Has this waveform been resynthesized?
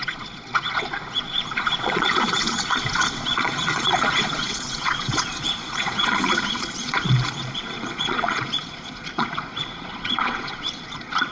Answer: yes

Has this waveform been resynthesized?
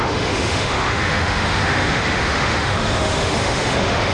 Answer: yes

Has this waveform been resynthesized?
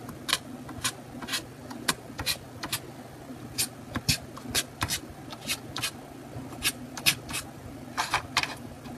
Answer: no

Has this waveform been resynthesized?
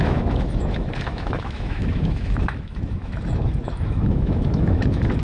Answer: yes